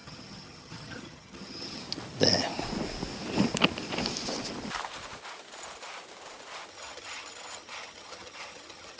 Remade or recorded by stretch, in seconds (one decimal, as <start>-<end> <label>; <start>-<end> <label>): 0.0-1.8 remade; 1.8-6.7 recorded; 6.7-9.0 remade